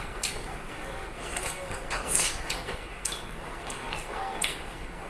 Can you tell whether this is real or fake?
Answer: fake